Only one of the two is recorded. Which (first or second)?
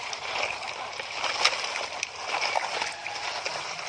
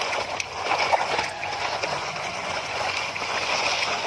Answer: first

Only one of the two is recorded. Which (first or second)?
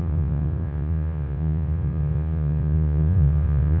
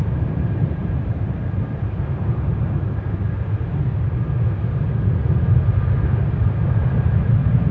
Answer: second